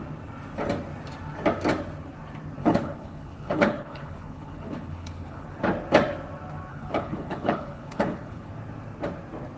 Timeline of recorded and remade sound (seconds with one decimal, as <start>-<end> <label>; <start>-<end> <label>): 0.0-2.6 recorded; 2.6-5.6 remade; 5.6-6.7 recorded; 6.7-8.5 remade; 8.5-9.6 recorded